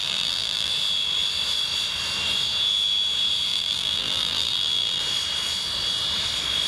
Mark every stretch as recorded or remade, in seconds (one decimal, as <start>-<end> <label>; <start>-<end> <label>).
0.0-0.7 remade; 0.7-3.5 recorded; 3.5-5.0 remade; 5.0-6.7 recorded

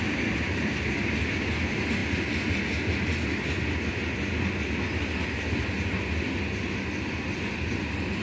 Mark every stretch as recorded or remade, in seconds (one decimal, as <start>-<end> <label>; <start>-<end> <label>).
0.0-8.2 recorded

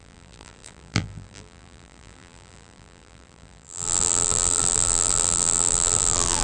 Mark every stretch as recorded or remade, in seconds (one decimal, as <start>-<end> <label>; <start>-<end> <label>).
0.0-6.4 remade

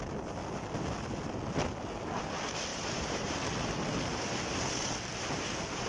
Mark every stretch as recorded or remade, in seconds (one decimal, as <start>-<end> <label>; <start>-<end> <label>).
0.0-2.7 recorded; 2.7-3.4 remade; 3.4-5.9 recorded